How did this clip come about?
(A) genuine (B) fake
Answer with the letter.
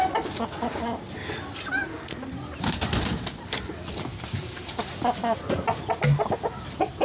A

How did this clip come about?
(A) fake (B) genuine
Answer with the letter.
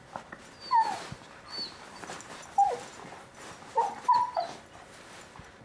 B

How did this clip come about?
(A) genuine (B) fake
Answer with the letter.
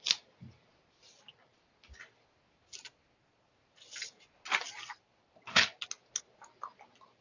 A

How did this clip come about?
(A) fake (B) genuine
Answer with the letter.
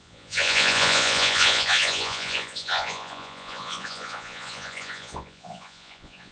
A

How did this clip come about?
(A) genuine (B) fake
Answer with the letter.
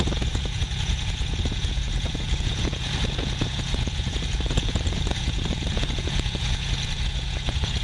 B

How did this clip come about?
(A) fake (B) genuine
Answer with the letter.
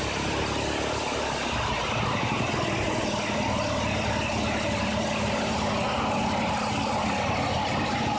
B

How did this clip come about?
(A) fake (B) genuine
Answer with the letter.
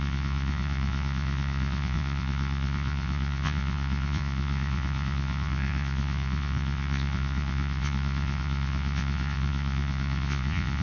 A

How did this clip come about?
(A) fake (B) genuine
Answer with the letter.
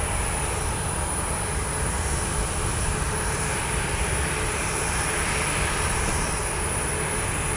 B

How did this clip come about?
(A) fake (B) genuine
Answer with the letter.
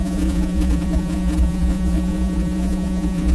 A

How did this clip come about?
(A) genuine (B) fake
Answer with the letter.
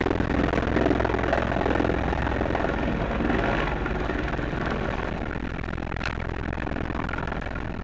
A